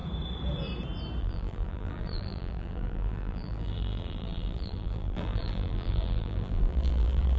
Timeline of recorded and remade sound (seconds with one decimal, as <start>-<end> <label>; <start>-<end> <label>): 0.0-1.2 recorded; 1.2-7.4 remade